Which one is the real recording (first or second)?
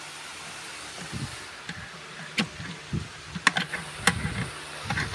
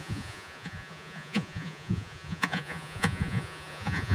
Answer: first